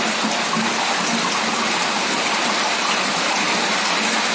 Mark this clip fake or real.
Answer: real